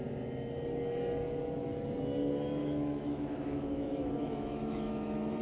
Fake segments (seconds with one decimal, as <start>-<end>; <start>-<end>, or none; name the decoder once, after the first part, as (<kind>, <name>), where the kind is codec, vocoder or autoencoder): 2.6-5.4 (autoencoder, DAC-VAE)